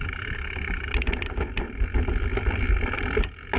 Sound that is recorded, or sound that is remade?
recorded